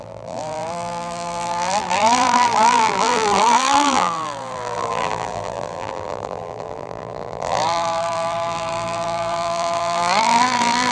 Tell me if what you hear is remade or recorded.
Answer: remade